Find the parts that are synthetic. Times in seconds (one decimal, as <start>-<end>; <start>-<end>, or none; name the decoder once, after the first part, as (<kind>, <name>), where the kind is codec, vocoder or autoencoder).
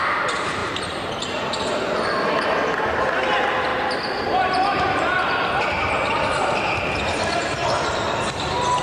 3.7-7.8 (vocoder, BigVGAN v2)